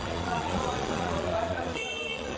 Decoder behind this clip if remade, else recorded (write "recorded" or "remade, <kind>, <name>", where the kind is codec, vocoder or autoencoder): remade, vocoder, Vocos